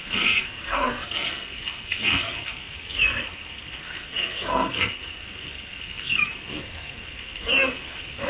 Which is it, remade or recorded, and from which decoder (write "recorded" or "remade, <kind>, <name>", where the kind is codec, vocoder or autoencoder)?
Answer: remade, codec, SNAC